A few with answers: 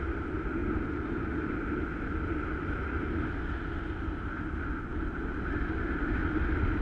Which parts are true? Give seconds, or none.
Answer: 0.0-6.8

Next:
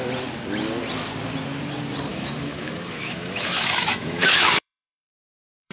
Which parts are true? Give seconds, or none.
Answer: 0.0-2.1

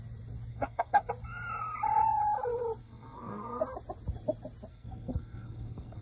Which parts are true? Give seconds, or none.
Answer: 0.0-0.5; 1.1-2.8; 3.6-4.7

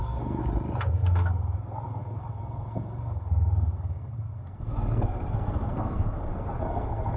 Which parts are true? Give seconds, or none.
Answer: 0.4-0.9

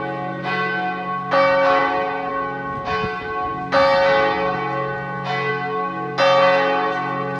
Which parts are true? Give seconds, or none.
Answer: 0.0-7.4

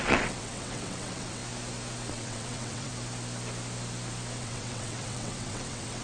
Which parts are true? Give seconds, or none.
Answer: 1.4-2.1; 2.9-4.4

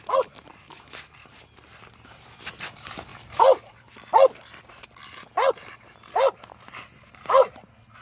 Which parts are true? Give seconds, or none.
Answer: 0.0-8.0